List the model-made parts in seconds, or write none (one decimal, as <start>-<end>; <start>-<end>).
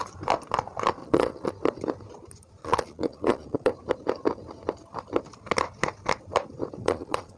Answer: 1.0-1.5; 2.6-3.7; 6.8-7.4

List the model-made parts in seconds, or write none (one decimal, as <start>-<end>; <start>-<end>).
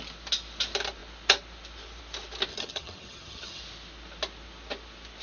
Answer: 2.5-3.6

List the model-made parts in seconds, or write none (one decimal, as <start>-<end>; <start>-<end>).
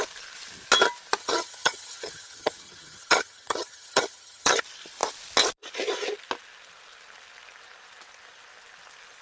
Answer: 1.2-4.6